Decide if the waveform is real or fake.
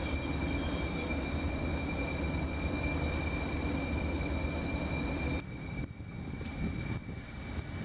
real